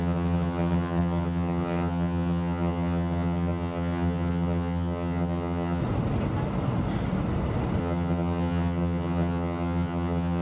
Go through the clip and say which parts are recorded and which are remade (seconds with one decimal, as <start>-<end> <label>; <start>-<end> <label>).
0.0-5.8 remade; 5.8-7.8 recorded; 7.8-10.4 remade